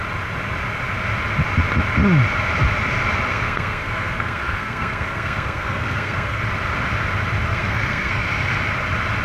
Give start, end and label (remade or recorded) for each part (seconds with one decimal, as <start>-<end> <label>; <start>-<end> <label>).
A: 0.0-3.3 recorded; 3.3-6.4 remade; 6.4-7.5 recorded; 7.5-8.3 remade; 8.3-9.2 recorded